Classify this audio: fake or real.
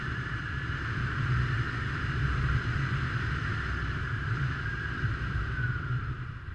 fake